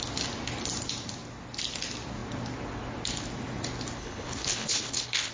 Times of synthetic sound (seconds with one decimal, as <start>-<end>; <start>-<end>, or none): 4.0-5.3